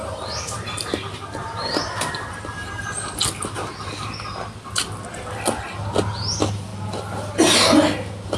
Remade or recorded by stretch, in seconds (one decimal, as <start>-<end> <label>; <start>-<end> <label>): 0.0-8.4 recorded